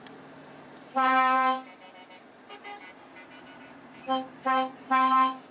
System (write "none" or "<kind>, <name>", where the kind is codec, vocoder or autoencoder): vocoder, BigVGAN v2